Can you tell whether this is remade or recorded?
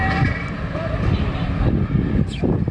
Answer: recorded